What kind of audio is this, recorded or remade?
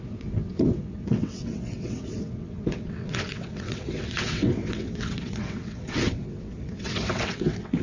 remade